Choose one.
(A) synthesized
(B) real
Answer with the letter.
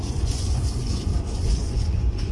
A